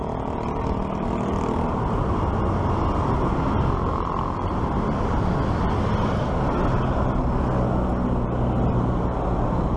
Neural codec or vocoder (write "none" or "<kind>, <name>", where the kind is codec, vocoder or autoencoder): none